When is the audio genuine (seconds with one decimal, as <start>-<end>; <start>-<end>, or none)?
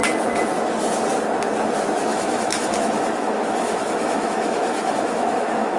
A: 0.0-2.1